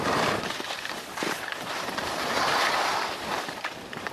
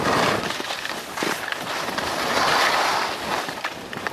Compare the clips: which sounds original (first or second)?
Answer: second